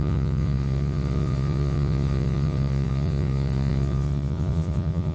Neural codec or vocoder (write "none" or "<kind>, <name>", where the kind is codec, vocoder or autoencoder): vocoder, Vocos